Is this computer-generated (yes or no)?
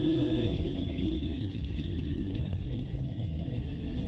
yes